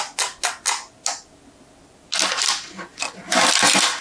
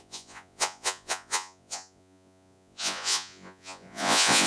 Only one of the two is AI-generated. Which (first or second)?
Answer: second